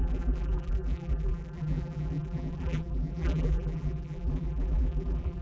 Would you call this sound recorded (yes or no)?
no